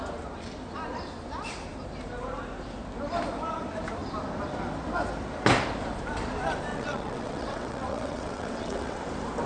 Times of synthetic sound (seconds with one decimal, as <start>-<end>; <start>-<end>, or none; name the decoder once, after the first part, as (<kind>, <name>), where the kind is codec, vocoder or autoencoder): 6.7-9.0 (vocoder, WaveNeXt)